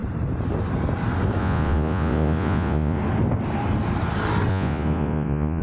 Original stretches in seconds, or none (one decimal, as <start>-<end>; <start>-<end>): 0.0-1.4; 3.0-4.5